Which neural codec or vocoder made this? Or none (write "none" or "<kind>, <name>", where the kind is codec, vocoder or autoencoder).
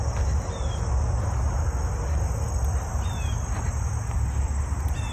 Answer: none